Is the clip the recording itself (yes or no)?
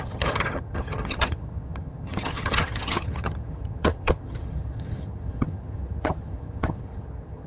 no